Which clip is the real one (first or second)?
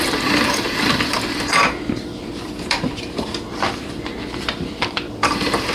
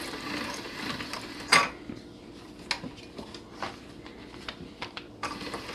second